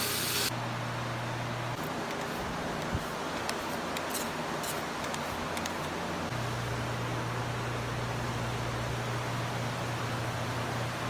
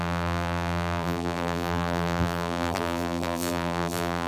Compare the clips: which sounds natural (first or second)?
first